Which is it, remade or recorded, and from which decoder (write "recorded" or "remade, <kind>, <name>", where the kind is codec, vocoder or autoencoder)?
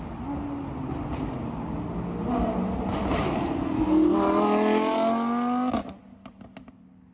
recorded